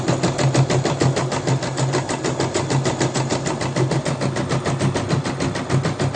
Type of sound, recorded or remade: recorded